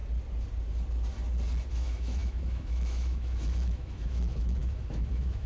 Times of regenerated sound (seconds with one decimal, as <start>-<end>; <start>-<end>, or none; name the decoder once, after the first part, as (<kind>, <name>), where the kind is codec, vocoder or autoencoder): 1.7-5.5 (autoencoder, DAC-VAE)